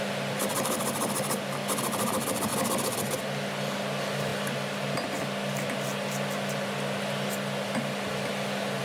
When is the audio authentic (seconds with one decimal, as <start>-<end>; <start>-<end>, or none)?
0.0-8.8